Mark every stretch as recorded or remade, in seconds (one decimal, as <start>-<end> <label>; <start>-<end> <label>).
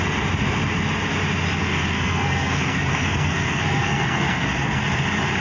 0.0-1.6 recorded; 1.6-4.8 remade; 4.8-5.4 recorded